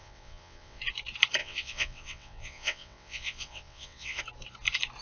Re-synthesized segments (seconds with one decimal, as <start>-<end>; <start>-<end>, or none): 0.0-0.8; 1.4-4.2